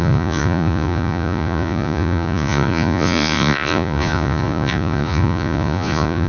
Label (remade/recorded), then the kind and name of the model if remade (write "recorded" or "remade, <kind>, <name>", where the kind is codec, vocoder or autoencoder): remade, vocoder, Vocos